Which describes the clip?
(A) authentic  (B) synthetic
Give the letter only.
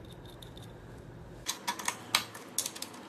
A